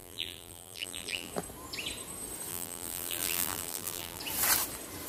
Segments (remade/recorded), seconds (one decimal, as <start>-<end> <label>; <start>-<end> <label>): 0.0-1.3 remade; 1.3-2.5 recorded; 2.5-4.2 remade; 4.2-5.1 recorded